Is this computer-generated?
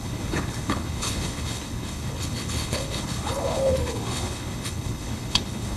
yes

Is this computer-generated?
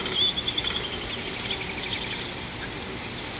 no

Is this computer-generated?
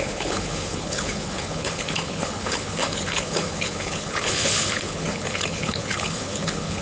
yes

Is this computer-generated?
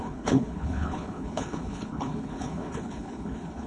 yes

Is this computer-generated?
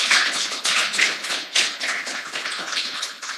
yes